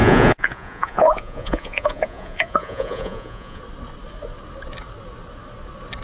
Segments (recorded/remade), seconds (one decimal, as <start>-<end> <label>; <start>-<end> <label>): 0.0-3.6 remade; 3.6-6.0 recorded